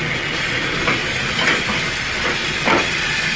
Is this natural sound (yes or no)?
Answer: yes